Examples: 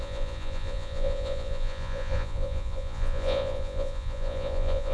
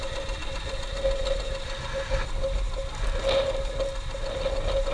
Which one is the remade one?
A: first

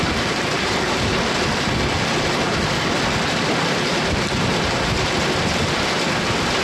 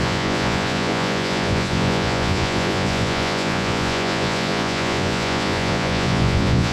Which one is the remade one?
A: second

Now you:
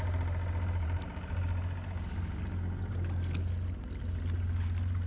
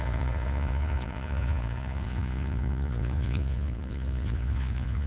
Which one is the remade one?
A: second